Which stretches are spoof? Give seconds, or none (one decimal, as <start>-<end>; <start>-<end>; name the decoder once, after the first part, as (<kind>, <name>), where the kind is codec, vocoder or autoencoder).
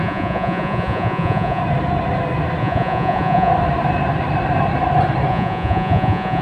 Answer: 0.0-1.6 (vocoder, Vocos); 2.6-3.5; 5.3-6.4